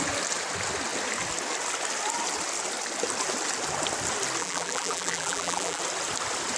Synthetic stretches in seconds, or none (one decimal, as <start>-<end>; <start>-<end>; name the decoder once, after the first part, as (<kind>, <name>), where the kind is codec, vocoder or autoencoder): 4.4-5.8 (vocoder, BigVGAN v2)